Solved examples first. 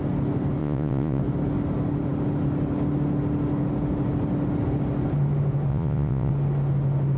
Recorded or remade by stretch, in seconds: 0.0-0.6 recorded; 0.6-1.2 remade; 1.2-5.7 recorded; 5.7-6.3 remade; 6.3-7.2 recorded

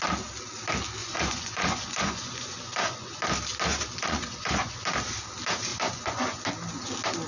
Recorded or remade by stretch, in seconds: 0.0-1.0 recorded; 1.0-3.2 remade; 3.2-3.7 recorded; 3.7-4.8 remade; 4.8-5.7 recorded; 5.7-6.4 remade; 6.4-7.3 recorded

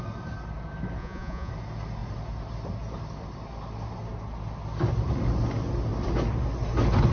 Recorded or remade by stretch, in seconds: 0.0-1.0 recorded; 1.0-1.5 remade; 1.5-7.1 recorded

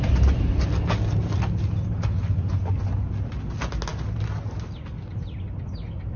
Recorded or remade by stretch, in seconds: 0.0-6.2 recorded

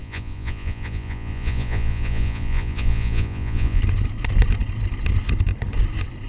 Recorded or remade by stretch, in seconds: 0.0-3.8 remade; 3.8-6.3 recorded

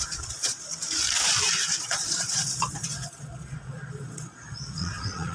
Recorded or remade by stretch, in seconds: 0.0-0.7 remade; 0.7-1.8 recorded; 1.8-5.3 remade